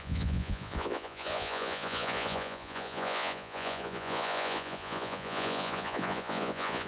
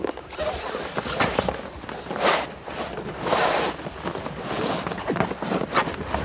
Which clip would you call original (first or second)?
second